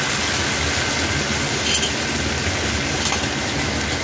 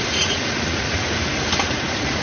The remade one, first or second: second